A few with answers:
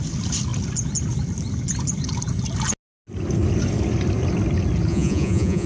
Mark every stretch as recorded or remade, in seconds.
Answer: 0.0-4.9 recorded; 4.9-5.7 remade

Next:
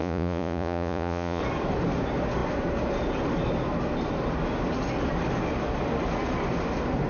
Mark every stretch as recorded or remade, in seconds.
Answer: 0.0-1.4 remade; 1.4-7.1 recorded

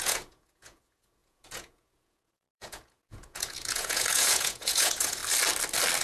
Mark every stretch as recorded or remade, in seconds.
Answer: 0.0-5.2 remade; 5.2-6.0 recorded

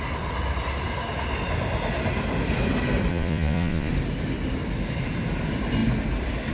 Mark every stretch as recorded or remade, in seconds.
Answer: 0.0-3.1 recorded; 3.1-3.9 remade; 3.9-6.5 recorded

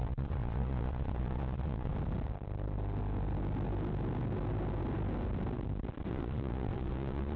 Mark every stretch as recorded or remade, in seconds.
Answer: 0.0-1.9 remade; 1.9-6.1 recorded; 6.1-7.4 remade

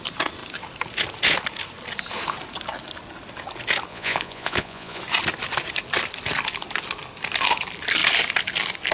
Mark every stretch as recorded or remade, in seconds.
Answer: 0.0-3.9 recorded; 3.9-5.0 remade; 5.0-8.9 recorded

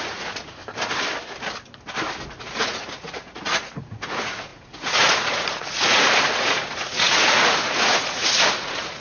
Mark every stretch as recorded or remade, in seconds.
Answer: 0.0-0.6 remade; 0.6-2.4 recorded; 2.4-9.0 remade